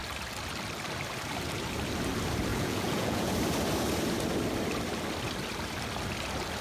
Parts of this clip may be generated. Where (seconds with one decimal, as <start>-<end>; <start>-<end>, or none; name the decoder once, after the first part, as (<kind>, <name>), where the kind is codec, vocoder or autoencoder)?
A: 2.5-3.3 (vocoder, Vocos)